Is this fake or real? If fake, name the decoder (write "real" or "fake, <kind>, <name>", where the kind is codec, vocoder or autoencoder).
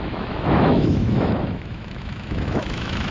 fake, autoencoder, DAC-VAE